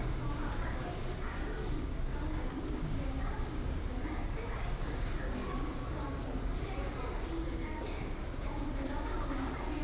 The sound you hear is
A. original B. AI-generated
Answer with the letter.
B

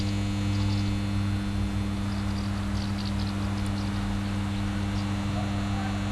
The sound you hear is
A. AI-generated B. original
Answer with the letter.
B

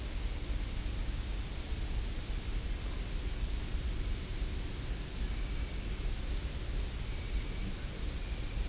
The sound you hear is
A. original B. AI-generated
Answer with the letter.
A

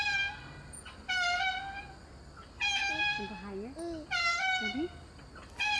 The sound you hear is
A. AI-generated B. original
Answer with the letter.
B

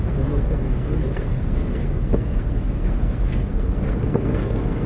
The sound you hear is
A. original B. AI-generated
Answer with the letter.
B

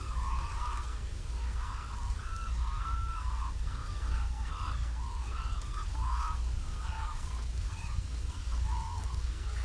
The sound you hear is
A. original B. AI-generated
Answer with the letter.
B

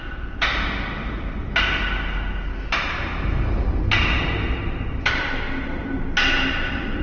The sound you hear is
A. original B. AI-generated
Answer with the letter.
A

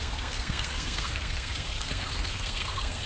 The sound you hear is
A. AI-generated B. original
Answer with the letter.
A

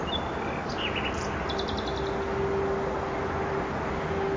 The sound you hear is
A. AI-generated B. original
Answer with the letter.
B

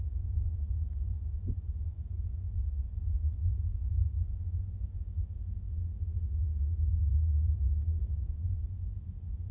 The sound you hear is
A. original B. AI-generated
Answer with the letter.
B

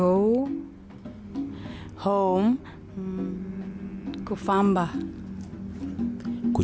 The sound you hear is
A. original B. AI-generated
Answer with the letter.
A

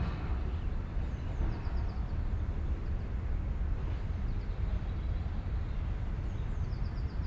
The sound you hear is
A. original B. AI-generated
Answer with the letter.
A